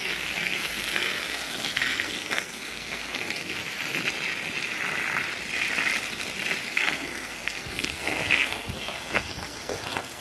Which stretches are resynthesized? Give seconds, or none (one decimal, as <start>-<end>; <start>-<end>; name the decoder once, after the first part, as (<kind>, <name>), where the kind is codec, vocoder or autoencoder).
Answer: 0.0-3.6 (codec, SNAC); 6.7-10.2